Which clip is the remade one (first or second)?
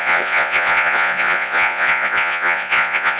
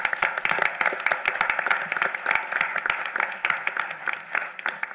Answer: first